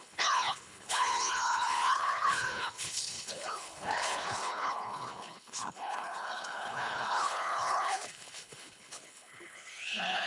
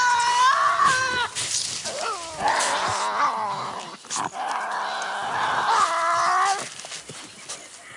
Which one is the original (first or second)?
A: second